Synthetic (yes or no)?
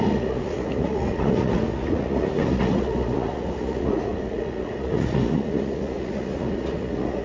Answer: yes